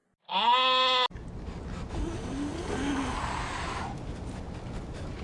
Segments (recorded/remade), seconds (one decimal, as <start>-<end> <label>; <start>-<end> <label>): 0.0-5.2 recorded